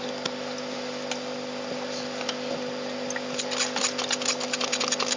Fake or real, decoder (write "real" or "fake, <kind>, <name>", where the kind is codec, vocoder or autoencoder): real